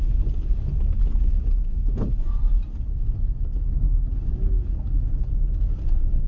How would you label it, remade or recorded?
recorded